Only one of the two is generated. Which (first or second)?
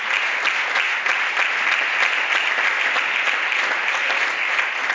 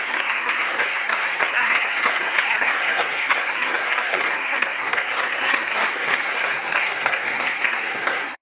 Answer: second